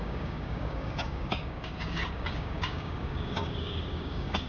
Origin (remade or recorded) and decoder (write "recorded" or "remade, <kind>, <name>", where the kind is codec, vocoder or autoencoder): remade, codec, DAC